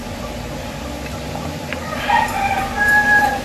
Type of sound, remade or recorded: remade